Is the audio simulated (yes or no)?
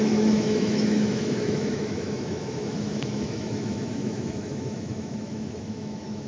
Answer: yes